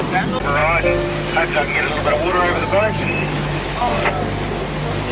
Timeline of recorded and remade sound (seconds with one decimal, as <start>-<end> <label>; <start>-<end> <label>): 0.0-2.7 recorded; 2.7-3.9 remade; 3.9-5.1 recorded